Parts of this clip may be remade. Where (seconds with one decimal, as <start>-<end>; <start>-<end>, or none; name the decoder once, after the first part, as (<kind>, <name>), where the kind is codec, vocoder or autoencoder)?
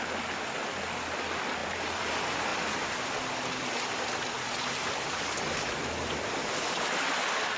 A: 1.6-2.1 (vocoder, BigVGAN v2)